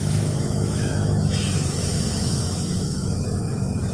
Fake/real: fake